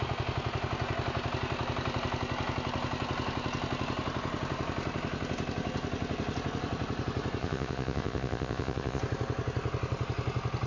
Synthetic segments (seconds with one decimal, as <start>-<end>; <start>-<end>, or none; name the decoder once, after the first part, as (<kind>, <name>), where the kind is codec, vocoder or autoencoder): 7.4-9.0 (vocoder, Vocos)